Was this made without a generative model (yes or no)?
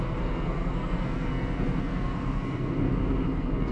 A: no